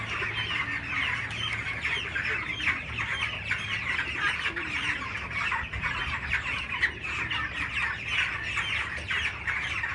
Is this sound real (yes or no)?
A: yes